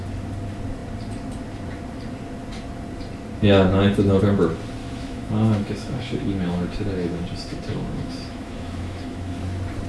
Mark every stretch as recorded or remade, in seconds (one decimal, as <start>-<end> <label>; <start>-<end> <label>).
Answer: 0.0-4.8 recorded; 4.8-7.2 remade; 7.2-7.7 recorded; 7.7-9.4 remade; 9.4-9.9 recorded